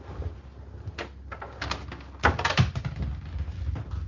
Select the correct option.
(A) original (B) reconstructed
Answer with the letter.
A